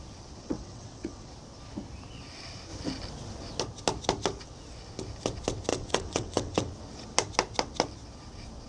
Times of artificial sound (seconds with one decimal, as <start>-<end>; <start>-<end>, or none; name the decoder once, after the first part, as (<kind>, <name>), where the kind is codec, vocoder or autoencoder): 0.4-1.3 (vocoder, WaveNeXt); 5.7-6.7